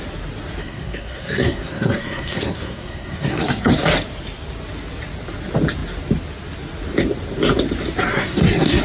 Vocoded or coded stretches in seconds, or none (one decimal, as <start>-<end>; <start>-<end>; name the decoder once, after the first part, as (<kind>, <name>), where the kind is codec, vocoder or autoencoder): 0.6-3.7 (codec, SNAC); 8.1-8.8